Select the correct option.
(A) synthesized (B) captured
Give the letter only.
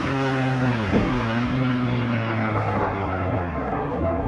A